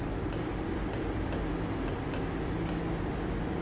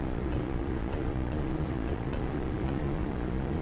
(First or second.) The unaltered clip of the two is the first